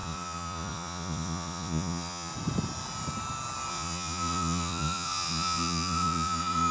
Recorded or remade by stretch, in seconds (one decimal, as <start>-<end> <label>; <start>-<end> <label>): 0.0-2.3 remade; 2.3-3.7 recorded; 3.7-6.7 remade